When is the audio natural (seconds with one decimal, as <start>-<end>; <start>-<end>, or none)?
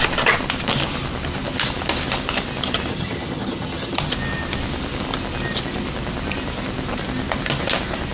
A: 0.0-2.9; 4.1-8.1